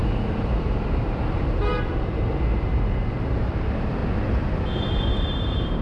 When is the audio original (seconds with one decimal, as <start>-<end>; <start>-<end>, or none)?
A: 4.0-4.8